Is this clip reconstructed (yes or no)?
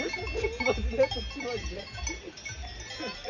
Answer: no